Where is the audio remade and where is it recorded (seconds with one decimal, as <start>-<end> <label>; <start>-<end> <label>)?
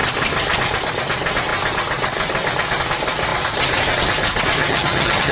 0.0-4.6 recorded; 4.6-5.3 remade